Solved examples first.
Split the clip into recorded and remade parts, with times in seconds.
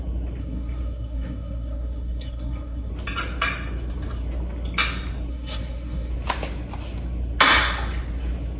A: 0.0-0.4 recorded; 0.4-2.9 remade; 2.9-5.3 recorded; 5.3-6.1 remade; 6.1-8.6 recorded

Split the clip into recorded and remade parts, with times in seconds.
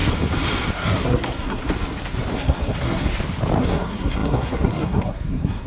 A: 0.0-0.7 recorded; 0.7-1.6 remade; 1.6-2.4 recorded; 2.4-3.1 remade; 3.1-3.6 recorded; 3.6-5.7 remade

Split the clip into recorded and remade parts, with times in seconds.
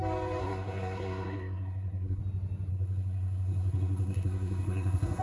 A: 0.0-0.4 recorded; 0.4-2.2 remade; 2.2-2.7 recorded; 2.7-5.2 remade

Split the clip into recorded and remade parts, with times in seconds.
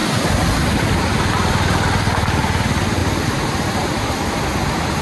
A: 0.0-5.0 recorded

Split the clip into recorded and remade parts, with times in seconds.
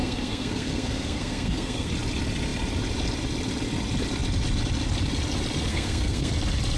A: 0.0-1.9 remade; 1.9-5.7 recorded; 5.7-6.3 remade; 6.3-6.8 recorded